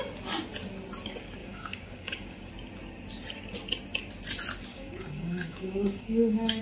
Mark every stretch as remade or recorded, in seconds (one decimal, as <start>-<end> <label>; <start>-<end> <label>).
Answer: 0.0-1.4 recorded; 1.4-2.5 remade; 2.5-4.7 recorded; 4.7-6.6 remade